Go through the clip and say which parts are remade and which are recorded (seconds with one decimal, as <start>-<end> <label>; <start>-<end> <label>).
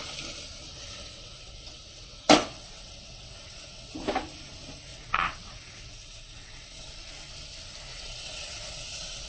0.0-0.7 recorded; 0.7-3.9 remade; 3.9-4.9 recorded; 4.9-6.9 remade; 6.9-7.9 recorded; 7.9-9.3 remade